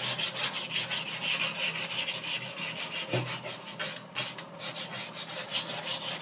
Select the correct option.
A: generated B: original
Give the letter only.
B